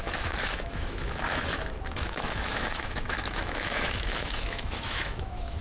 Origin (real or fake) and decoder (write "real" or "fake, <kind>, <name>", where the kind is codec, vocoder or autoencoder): fake, autoencoder, DAC-VAE